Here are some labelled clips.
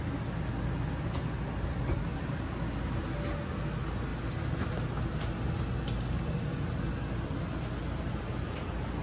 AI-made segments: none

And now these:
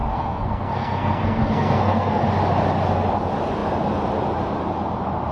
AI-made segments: 0.0-2.2 (codec, SNAC)

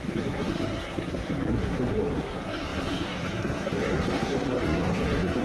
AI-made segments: 0.0-5.4 (codec, SNAC)

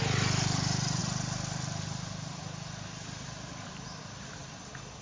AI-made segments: none